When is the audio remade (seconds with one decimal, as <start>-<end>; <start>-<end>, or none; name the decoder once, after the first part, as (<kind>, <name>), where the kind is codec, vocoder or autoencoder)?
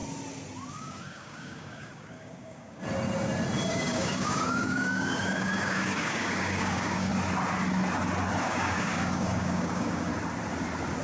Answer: 0.7-2.8 (codec, DAC); 3.7-7.1; 8.4-10.1